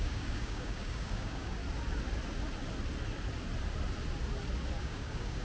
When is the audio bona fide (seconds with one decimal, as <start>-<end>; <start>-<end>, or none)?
1.6-4.8